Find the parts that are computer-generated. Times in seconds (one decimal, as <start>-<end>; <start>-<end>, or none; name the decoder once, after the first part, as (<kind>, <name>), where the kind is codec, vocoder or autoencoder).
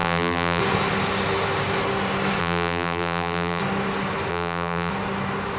0.0-0.6 (vocoder, BigVGAN v2); 2.4-3.6; 4.3-4.9